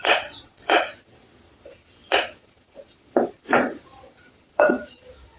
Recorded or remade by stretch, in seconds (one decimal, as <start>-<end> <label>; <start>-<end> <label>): 0.0-5.4 remade